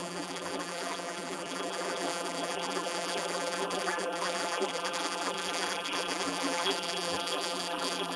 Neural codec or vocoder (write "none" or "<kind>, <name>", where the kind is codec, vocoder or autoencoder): vocoder, BigVGAN v2